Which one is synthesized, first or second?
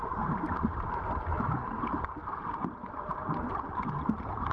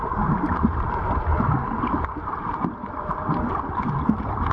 first